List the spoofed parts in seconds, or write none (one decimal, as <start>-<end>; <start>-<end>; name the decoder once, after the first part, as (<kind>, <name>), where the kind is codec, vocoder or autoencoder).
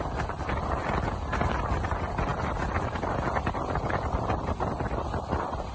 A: 2.3-5.7 (vocoder, BigVGAN v2)